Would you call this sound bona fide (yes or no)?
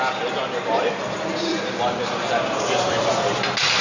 yes